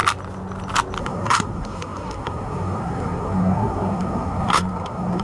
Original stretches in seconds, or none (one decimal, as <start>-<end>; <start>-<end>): 0.0-1.0